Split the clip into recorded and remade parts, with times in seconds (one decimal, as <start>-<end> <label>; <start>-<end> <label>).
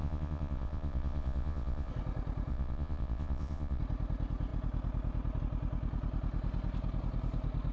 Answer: 0.0-1.9 remade; 1.9-2.5 recorded; 2.5-3.8 remade; 3.8-7.7 recorded